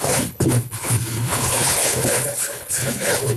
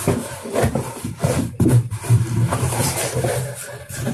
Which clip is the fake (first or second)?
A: first